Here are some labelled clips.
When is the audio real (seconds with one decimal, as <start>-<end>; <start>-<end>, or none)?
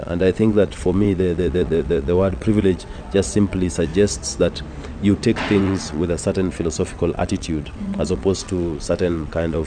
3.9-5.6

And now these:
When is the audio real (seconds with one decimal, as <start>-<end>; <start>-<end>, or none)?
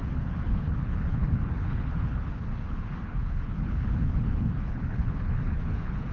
none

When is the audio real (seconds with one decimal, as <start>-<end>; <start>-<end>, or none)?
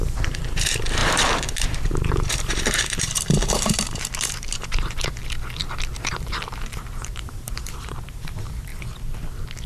5.2-6.4; 8.7-9.7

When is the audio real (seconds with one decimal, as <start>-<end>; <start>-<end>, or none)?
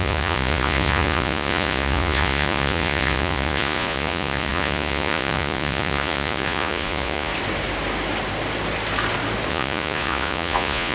7.3-9.5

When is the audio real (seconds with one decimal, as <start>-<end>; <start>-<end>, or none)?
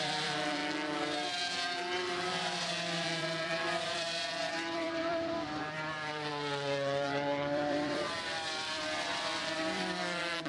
0.6-2.2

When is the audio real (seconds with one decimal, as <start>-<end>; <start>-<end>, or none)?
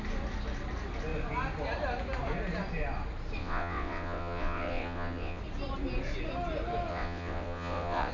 0.0-3.4; 5.4-6.9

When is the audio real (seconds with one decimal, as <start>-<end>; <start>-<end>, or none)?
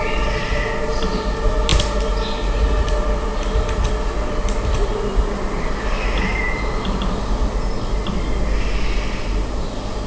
0.0-10.1